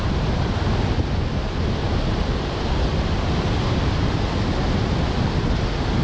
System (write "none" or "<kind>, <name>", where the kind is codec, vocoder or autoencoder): none